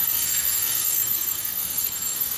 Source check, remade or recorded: remade